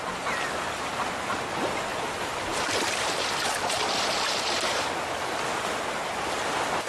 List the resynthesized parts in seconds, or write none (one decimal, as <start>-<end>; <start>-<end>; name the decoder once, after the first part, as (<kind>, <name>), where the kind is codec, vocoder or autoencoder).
1.9-5.3 (vocoder, BigVGAN v2)

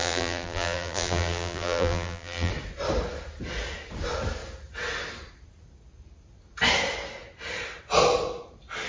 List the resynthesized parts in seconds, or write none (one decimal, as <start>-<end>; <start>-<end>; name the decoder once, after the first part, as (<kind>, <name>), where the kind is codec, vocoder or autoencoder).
0.0-2.5 (vocoder, BigVGAN v2)

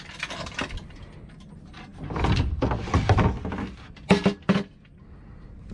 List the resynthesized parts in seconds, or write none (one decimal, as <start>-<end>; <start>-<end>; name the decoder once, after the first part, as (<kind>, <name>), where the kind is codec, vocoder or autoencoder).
none

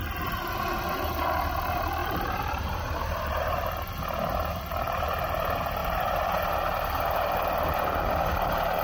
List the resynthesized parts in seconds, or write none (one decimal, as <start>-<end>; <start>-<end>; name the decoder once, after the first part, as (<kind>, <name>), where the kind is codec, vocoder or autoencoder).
2.0-3.6 (vocoder, BigVGAN v2); 5.8-8.8

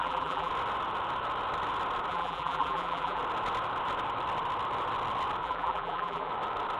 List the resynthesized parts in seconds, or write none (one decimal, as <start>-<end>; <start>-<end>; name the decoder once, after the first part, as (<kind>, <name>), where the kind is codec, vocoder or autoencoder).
0.0-0.5 (vocoder, BigVGAN v2); 2.1-3.2; 5.4-6.3

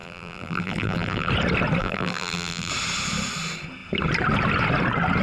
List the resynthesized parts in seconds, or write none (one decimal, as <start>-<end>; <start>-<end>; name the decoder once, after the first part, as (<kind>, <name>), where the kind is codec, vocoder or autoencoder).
0.0-1.3 (vocoder, BigVGAN v2); 1.8-2.7